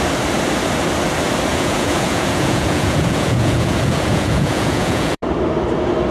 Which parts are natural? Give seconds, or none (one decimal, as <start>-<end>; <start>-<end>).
0.0-1.5; 5.2-6.1